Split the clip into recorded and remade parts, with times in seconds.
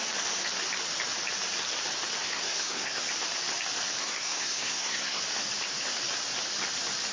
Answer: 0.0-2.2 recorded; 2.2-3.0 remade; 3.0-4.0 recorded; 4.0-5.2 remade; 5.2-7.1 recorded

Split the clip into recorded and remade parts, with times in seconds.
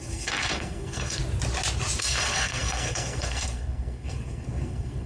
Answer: 0.0-1.2 remade; 1.2-2.0 recorded; 2.0-5.1 remade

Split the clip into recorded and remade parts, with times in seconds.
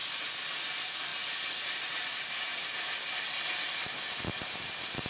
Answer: 0.0-5.1 recorded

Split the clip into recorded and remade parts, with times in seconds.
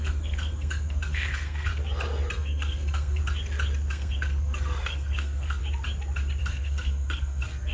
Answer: 0.0-1.7 remade; 1.7-2.3 recorded; 2.3-3.2 remade; 3.2-3.9 recorded; 3.9-5.6 remade; 5.6-6.4 recorded; 6.4-7.7 remade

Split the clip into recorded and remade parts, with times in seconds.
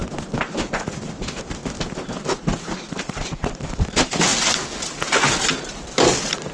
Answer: 0.0-6.5 recorded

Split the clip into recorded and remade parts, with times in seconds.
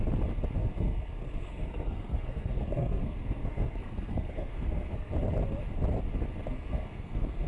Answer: 0.0-0.6 recorded; 0.6-5.1 remade; 5.1-6.5 recorded; 6.5-7.5 remade